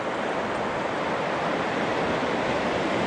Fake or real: real